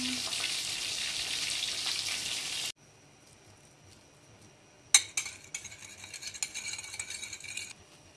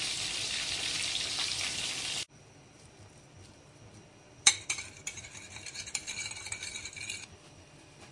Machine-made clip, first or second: second